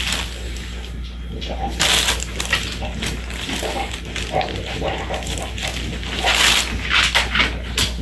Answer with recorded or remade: recorded